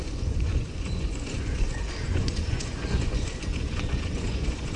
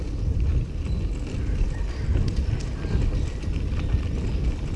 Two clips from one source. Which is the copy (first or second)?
first